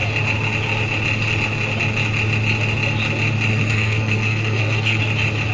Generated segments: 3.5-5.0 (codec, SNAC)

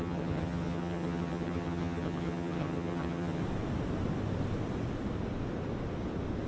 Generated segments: 0.0-3.4 (vocoder, HiFi-GAN)

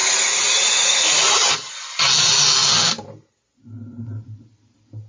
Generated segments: none

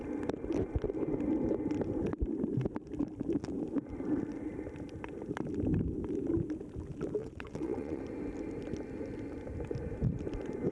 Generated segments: 7.2-8.0 (vocoder, Vocos)

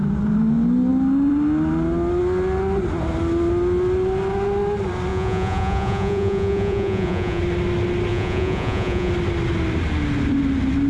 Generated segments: 5.1-7.4 (vocoder, Vocos); 8.1-9.1